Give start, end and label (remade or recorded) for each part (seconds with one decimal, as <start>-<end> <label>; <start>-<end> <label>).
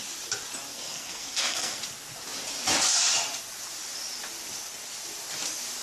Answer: 0.0-0.7 recorded; 0.7-1.8 remade; 1.8-5.8 recorded